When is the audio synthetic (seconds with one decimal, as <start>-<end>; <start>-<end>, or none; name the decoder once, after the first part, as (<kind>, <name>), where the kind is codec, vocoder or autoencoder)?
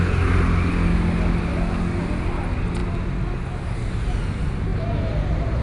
none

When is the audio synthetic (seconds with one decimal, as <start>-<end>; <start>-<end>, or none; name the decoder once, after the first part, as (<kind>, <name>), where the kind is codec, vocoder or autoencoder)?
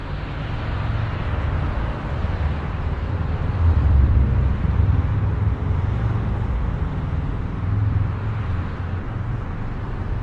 2.1-5.1 (vocoder, BigVGAN v2); 6.6-10.2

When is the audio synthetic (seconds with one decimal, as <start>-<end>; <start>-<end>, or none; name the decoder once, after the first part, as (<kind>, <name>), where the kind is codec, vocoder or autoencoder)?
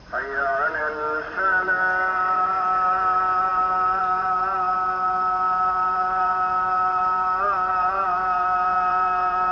0.0-9.5 (vocoder, BigVGAN v2)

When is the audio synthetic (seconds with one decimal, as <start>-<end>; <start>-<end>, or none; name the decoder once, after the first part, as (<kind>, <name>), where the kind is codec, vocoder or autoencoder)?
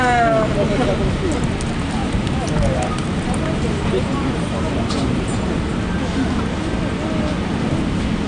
2.0-5.6 (vocoder, BigVGAN v2)